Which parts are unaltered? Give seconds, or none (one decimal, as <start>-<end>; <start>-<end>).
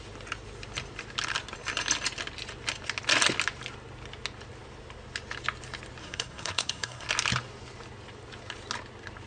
0.0-6.0; 7.1-9.3